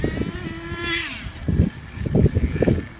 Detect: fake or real real